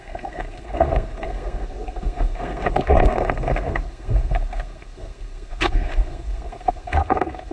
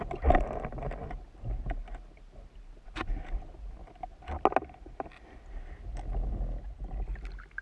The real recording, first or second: second